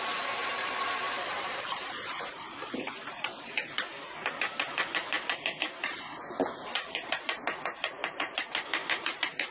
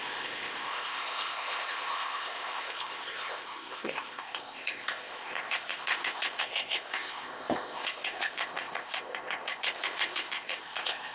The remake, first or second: second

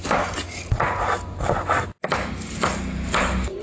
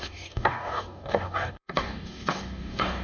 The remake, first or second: second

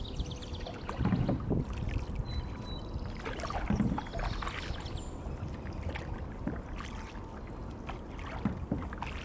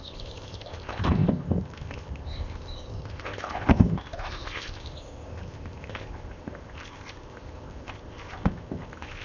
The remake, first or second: second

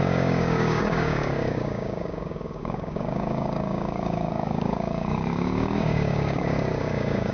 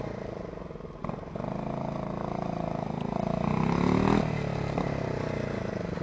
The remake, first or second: first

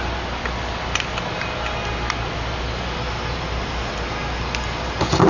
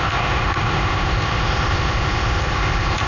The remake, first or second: second